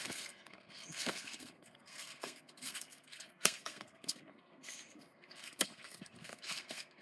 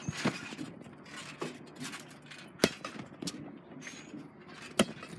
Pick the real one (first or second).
second